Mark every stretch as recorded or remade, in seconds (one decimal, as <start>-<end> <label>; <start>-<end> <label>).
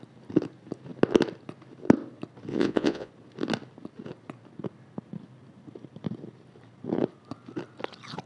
0.0-2.5 recorded; 2.5-3.1 remade; 3.1-8.3 recorded